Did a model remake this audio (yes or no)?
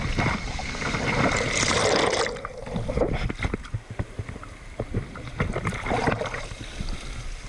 no